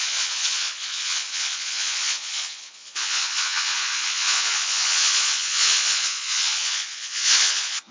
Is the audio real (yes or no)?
no